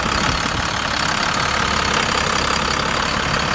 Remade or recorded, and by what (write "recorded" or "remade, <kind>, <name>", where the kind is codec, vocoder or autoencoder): recorded